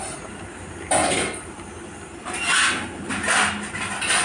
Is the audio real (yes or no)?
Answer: yes